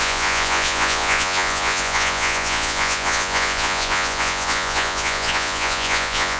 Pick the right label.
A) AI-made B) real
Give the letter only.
A